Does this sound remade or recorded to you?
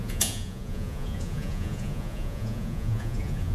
remade